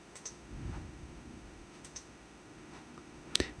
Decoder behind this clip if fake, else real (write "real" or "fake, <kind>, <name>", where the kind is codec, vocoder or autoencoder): fake, autoencoder, DAC-VAE